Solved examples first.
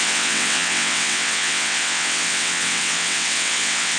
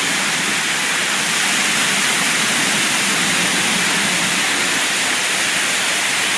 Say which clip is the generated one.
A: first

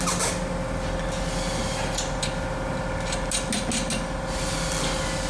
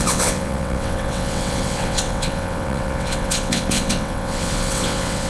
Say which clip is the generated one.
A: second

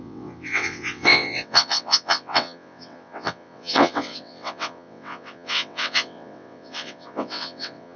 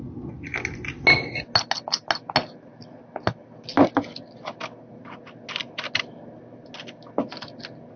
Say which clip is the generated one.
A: first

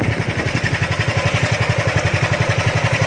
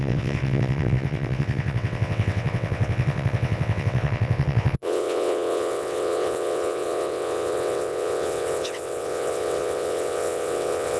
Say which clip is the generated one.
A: second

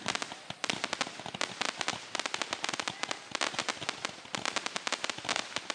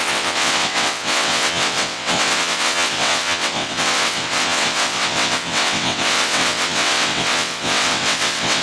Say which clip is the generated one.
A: second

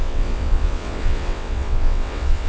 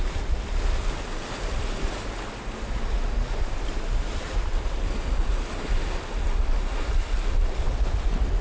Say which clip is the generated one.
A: first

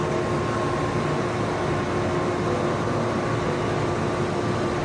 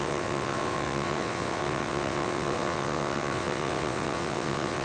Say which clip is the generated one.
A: second